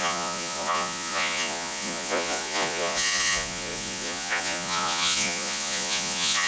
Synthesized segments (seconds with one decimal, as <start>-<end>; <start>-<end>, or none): 0.0-6.5